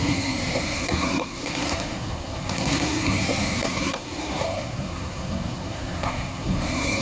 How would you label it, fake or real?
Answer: fake